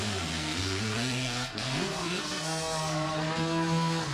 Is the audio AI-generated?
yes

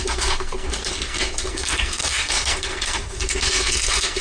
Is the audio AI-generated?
yes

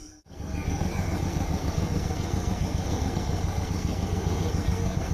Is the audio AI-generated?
yes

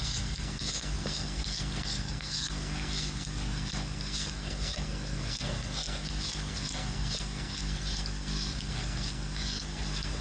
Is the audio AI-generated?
yes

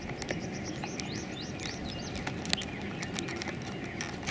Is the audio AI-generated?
no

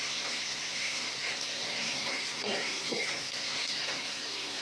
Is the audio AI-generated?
yes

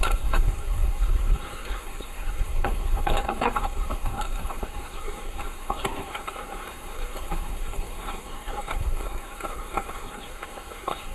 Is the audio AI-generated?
yes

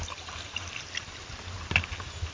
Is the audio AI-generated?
no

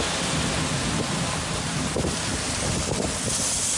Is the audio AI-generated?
no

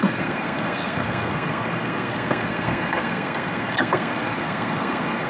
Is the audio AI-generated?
yes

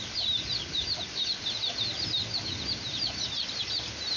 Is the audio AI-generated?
no